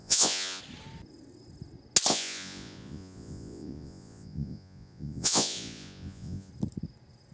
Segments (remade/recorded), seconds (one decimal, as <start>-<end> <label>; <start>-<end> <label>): 0.0-0.6 remade; 0.6-2.1 recorded; 2.1-6.5 remade; 6.5-7.3 recorded